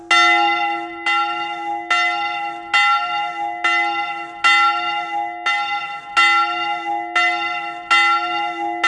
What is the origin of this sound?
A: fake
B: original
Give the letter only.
B